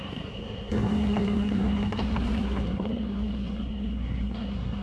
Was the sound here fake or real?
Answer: fake